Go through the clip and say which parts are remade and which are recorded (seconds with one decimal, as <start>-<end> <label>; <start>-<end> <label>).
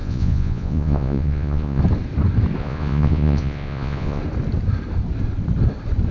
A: 0.0-1.8 remade; 1.8-2.6 recorded; 2.6-4.2 remade; 4.2-6.1 recorded